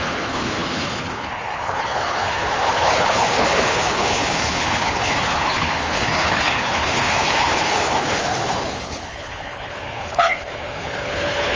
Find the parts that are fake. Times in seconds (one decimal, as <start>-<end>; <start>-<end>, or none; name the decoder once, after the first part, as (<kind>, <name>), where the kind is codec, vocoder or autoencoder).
0.0-11.6 (codec, HILCodec)